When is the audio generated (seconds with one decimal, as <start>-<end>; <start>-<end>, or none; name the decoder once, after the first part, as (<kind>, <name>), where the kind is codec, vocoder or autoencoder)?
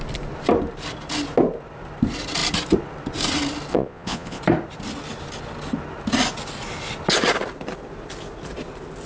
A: 3.7-4.4 (vocoder, Vocos)